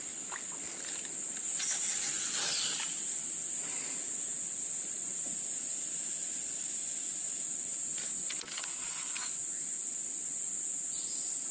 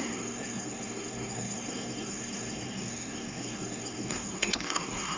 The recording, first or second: first